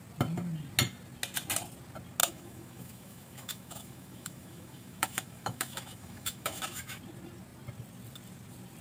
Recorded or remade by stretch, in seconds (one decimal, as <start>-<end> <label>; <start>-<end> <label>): 0.0-2.2 recorded; 2.2-7.0 remade; 7.0-8.8 recorded